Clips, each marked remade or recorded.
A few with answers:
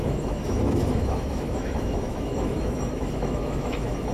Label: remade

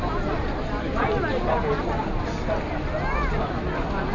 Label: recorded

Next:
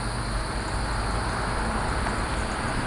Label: recorded